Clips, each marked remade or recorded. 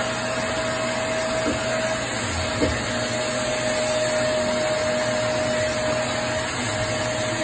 recorded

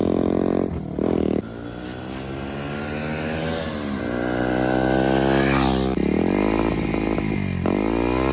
recorded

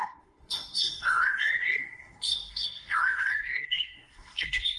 remade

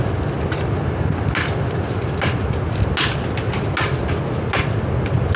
recorded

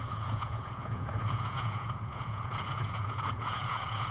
remade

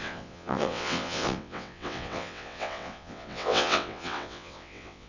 remade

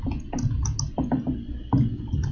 recorded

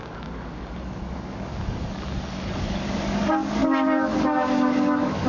remade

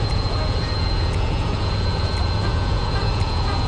remade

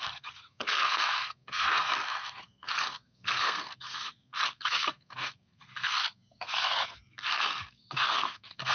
remade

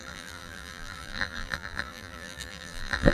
remade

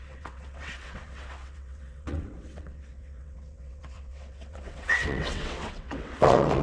remade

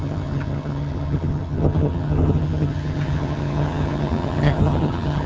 remade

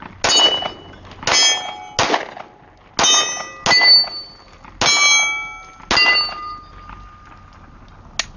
recorded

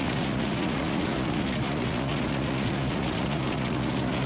remade